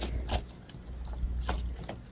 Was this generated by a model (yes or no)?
no